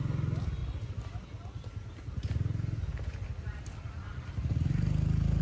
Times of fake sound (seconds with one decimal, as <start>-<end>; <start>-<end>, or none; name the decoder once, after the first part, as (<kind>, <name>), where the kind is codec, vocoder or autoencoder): none